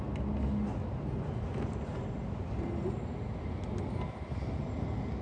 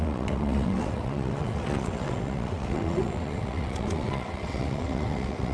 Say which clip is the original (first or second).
first